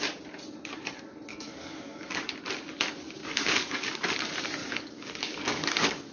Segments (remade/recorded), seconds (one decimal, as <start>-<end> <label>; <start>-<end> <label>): 0.0-1.3 recorded; 1.3-2.3 remade; 2.3-3.2 recorded; 3.2-4.1 remade; 4.1-4.6 recorded; 4.6-6.1 remade